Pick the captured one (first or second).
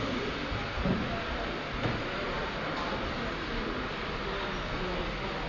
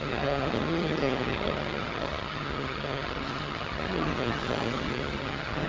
first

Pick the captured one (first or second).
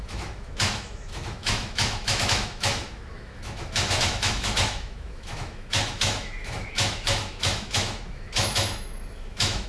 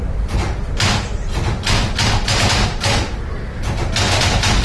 second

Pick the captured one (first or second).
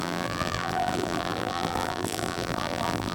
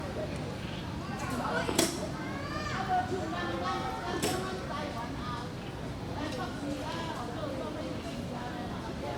second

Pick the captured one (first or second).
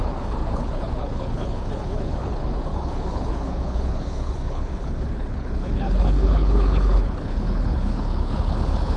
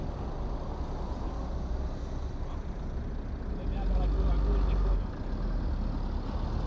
second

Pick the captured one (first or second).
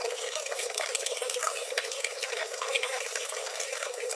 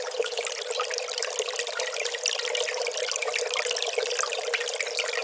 second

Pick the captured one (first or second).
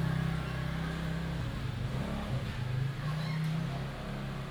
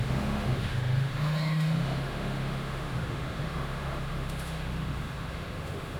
first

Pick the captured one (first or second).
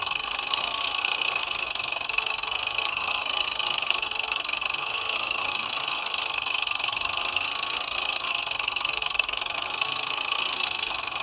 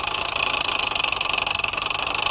second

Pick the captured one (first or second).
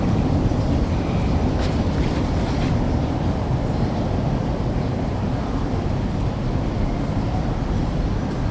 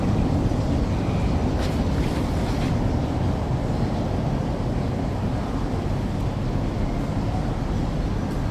second